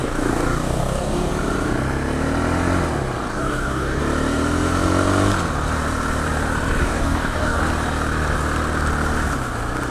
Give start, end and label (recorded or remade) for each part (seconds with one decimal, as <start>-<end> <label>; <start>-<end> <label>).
0.0-1.3 remade; 1.3-3.2 recorded; 3.2-4.0 remade; 4.0-6.8 recorded; 6.8-7.6 remade; 7.6-9.9 recorded